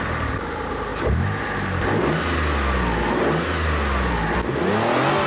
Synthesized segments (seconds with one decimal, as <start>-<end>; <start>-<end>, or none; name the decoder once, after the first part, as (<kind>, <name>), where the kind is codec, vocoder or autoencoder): none